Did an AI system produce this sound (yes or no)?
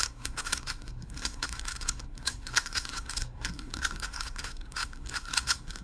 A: yes